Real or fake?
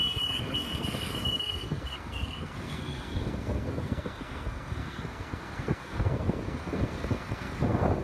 fake